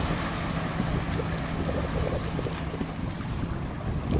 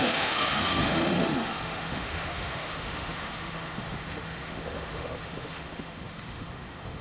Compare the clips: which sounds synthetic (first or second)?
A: second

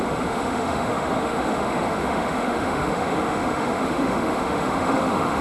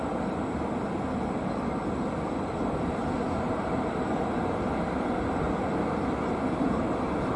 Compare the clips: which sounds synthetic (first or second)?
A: first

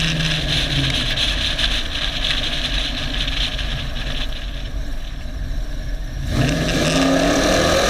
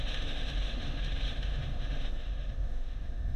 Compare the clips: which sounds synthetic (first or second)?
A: second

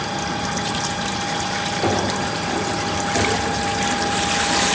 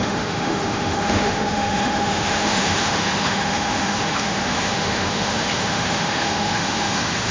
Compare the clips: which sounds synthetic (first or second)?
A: second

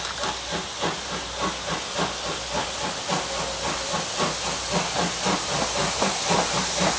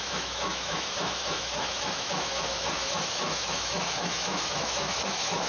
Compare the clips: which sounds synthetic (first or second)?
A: second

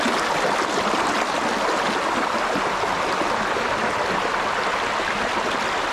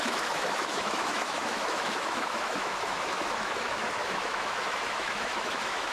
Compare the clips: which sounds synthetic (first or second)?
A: second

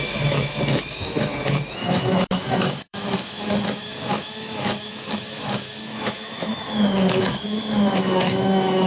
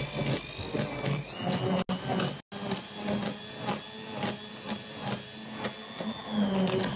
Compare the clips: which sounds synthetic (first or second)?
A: first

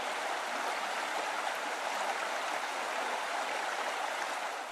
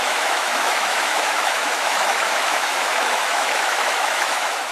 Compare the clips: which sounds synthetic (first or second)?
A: second